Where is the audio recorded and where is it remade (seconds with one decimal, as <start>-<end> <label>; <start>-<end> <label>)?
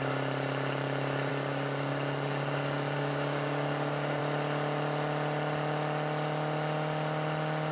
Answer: 0.0-1.3 recorded; 1.3-4.2 remade; 4.2-7.7 recorded